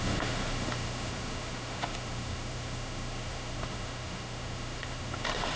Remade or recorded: remade